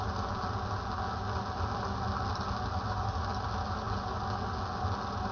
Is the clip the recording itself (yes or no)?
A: yes